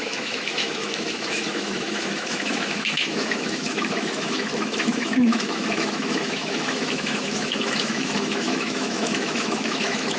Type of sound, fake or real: fake